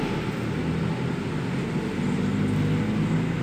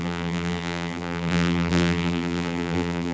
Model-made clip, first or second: second